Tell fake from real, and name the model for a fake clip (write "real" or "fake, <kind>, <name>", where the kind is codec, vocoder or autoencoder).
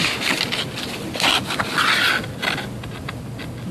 real